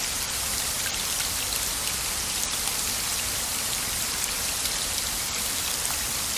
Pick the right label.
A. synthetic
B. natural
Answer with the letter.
A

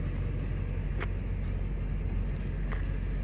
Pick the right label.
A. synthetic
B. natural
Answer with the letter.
B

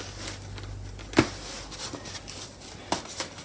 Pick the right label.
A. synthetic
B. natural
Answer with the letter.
B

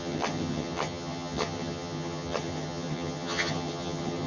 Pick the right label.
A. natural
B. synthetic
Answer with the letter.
B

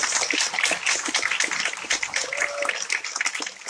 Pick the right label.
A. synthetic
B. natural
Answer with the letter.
B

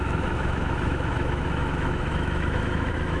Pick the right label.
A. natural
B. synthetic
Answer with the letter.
B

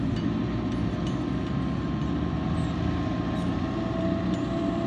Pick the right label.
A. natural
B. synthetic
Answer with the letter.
A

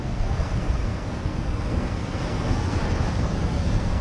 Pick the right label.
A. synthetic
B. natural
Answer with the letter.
A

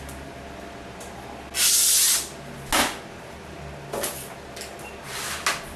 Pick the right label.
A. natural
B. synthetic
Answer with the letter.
A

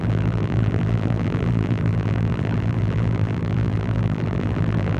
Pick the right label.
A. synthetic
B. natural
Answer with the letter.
A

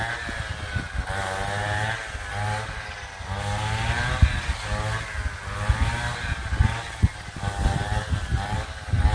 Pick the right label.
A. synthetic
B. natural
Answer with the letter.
B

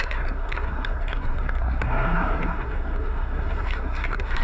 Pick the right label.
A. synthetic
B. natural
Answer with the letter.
A